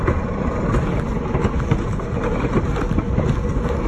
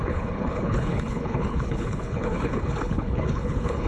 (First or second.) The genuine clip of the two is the first